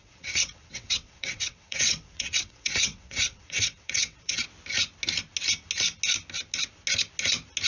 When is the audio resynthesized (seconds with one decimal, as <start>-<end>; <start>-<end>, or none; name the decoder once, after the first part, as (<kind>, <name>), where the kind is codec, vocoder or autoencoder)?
0.0-4.4 (vocoder, WaveNeXt)